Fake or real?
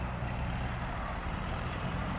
fake